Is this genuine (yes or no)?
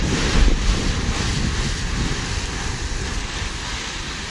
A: yes